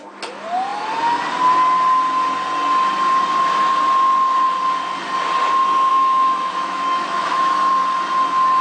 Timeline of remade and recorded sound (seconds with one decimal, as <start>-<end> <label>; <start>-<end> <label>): 0.0-5.9 recorded; 5.9-7.7 remade; 7.7-8.6 recorded